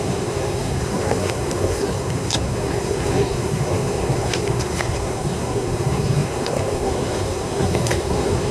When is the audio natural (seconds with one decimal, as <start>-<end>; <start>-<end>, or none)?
none